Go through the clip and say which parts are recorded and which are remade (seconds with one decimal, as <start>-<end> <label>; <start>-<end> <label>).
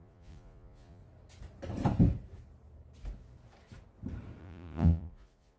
0.0-1.0 remade; 1.0-4.4 recorded; 4.4-5.6 remade